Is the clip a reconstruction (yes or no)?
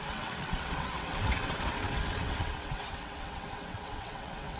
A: yes